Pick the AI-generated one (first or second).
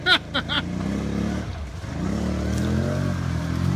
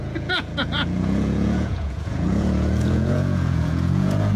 second